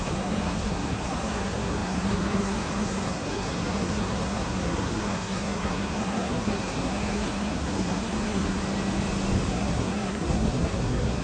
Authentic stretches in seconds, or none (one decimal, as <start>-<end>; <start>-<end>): 8.6-9.5